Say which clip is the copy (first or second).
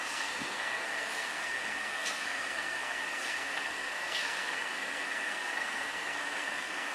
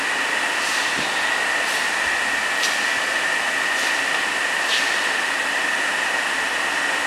first